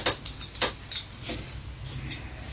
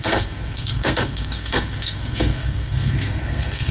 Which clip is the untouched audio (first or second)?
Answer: first